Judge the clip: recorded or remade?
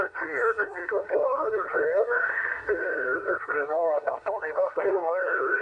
remade